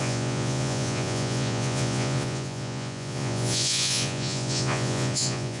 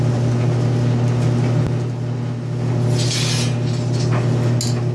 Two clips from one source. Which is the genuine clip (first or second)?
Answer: second